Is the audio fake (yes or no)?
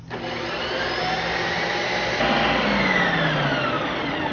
no